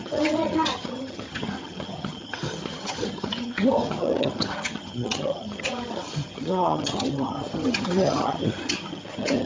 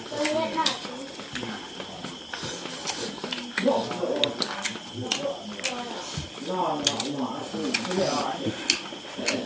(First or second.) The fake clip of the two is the first